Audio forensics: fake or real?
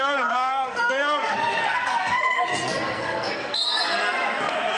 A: fake